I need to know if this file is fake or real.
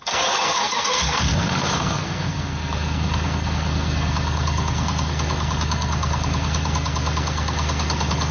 fake